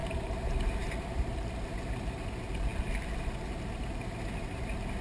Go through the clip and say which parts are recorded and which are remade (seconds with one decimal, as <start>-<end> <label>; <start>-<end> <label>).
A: 0.0-1.5 remade; 1.5-5.0 recorded